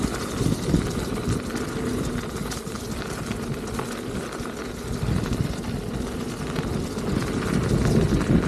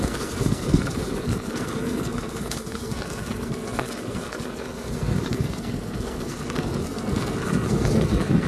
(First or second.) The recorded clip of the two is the first